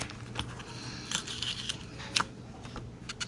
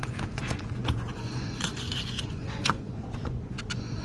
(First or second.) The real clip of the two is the first